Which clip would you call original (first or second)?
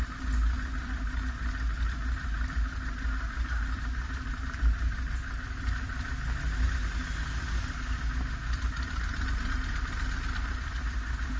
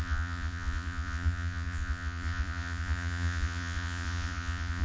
first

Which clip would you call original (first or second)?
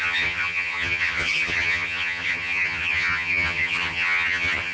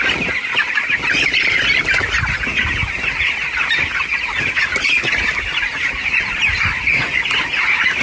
second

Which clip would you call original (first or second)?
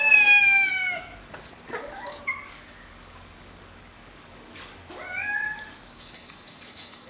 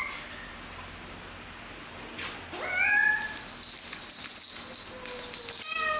second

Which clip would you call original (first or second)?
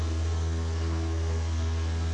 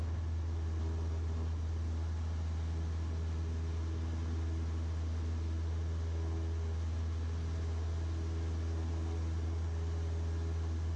second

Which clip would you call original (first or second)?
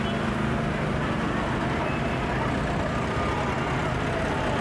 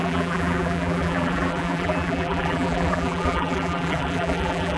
first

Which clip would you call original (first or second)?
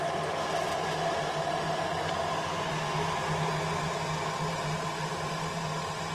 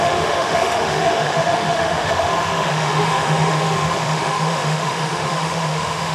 first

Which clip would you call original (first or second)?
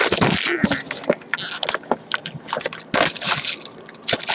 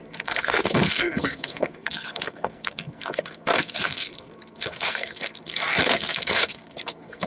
first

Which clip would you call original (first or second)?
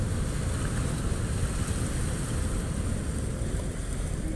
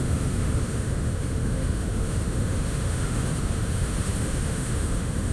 first